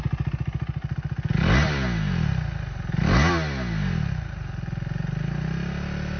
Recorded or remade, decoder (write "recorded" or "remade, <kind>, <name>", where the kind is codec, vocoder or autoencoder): recorded